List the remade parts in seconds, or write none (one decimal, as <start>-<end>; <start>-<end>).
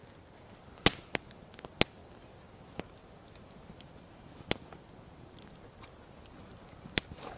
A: none